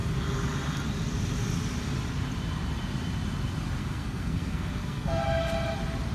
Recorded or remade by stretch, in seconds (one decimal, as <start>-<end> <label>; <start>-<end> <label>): 0.0-3.8 recorded; 3.8-5.2 remade; 5.2-6.1 recorded